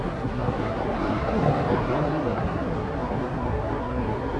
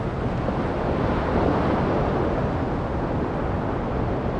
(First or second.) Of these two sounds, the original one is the second